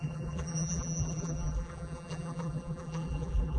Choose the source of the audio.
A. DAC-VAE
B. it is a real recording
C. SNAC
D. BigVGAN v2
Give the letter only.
D